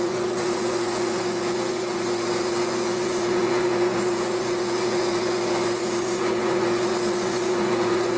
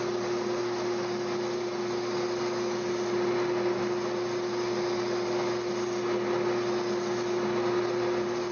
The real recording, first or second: second